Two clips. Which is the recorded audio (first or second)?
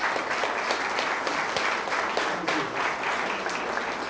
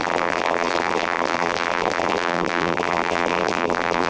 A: first